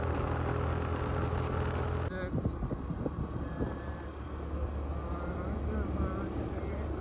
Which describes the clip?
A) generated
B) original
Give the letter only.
B